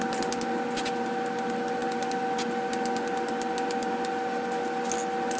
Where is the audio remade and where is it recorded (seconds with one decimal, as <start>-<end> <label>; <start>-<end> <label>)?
0.0-5.4 recorded